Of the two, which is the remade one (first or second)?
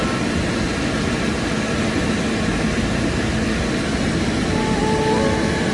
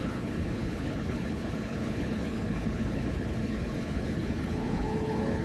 second